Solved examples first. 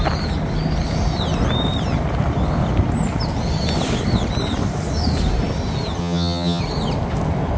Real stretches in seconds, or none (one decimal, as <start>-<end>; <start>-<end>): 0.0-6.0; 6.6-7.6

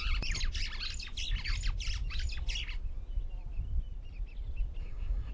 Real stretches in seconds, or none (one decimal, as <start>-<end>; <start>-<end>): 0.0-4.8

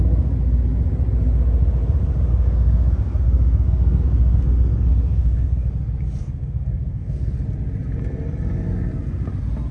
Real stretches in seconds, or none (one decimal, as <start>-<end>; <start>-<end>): 0.0-2.3; 5.7-6.2; 7.3-9.7

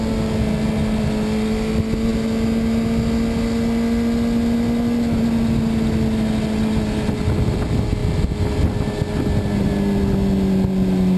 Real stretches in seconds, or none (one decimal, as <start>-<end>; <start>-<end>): 0.0-11.2

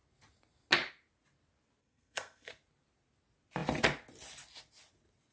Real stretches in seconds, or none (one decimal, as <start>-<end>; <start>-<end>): 0.0-1.8; 2.5-5.3

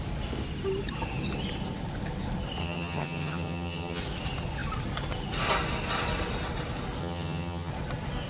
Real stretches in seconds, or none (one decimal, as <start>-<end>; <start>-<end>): 0.0-2.6; 4.0-7.0; 7.7-8.3

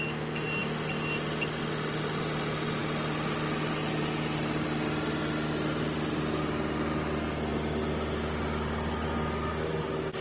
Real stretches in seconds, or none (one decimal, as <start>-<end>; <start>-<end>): 0.0-10.2